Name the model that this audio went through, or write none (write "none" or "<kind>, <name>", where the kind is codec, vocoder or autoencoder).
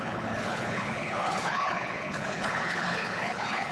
codec, HILCodec